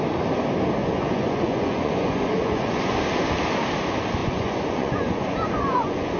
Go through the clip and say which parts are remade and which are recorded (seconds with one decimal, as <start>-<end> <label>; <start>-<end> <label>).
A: 0.0-0.8 recorded; 0.8-3.0 remade; 3.0-4.2 recorded; 4.2-6.2 remade